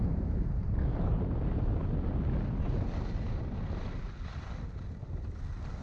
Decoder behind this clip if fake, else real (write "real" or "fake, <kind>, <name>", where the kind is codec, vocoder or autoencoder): real